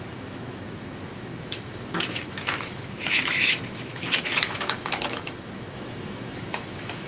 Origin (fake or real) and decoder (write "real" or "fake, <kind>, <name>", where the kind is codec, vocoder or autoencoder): fake, autoencoder, DAC-VAE